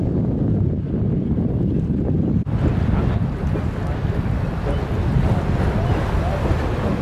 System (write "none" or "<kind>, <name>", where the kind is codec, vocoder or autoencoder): none